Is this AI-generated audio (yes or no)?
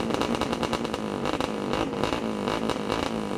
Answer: no